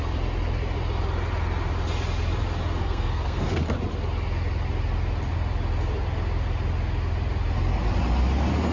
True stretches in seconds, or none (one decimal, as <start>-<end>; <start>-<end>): 0.0-2.8; 3.6-8.7